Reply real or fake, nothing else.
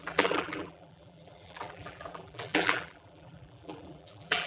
fake